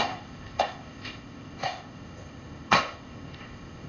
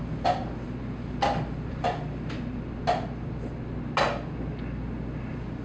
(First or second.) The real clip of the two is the second